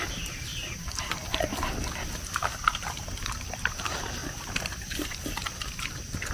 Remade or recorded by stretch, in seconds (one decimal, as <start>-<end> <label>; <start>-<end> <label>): 0.0-4.2 recorded; 4.2-5.2 remade; 5.2-6.3 recorded